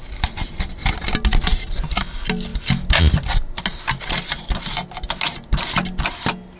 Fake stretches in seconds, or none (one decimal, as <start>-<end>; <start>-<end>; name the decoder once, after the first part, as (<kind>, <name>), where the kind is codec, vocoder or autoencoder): none